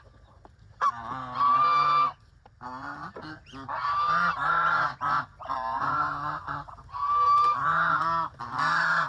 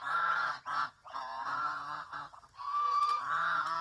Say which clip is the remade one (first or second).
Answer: second